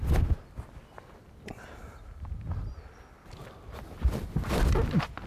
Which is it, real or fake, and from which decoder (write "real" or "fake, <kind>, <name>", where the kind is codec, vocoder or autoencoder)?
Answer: real